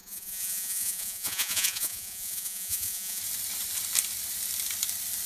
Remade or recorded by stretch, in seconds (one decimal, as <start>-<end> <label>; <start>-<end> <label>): 0.0-3.2 remade; 3.2-5.3 recorded